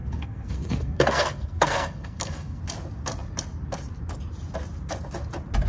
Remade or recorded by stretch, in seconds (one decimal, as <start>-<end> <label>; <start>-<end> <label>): 0.0-2.6 remade; 2.6-5.7 recorded